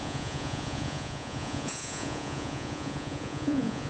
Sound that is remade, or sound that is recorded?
remade